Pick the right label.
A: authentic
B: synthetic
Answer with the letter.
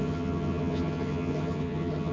B